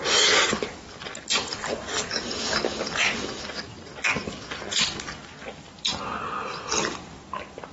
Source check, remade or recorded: recorded